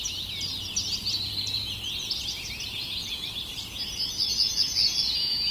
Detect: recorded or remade recorded